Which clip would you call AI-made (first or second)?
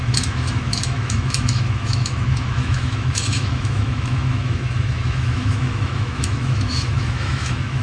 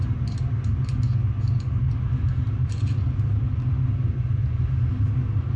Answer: first